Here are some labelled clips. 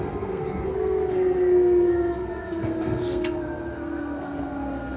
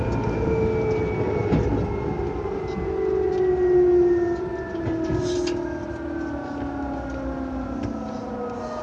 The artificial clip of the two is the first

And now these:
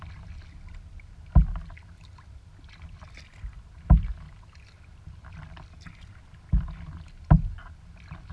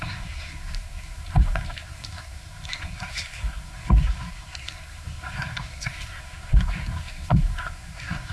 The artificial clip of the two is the second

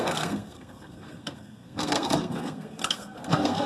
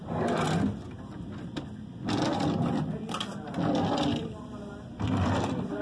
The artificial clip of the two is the first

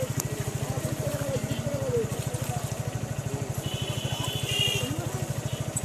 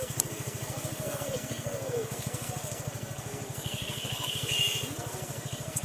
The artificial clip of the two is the second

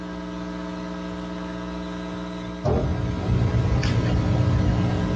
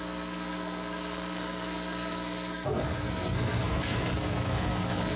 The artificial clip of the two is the second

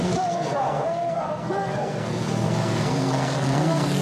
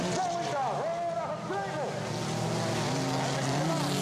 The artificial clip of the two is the first